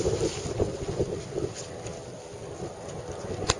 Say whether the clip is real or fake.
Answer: real